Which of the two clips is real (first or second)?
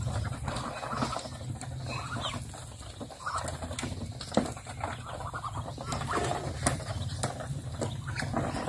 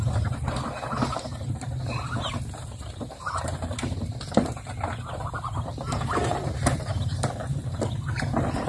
first